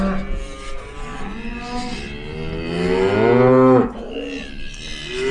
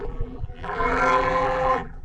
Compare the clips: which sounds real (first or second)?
first